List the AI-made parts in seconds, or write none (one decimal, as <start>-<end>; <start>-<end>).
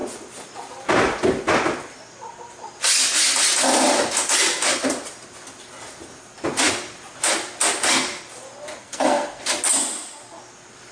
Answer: 8.8-9.4